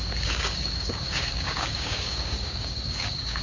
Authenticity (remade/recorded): remade